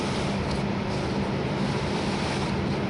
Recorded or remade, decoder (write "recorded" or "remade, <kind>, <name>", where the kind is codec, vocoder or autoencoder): recorded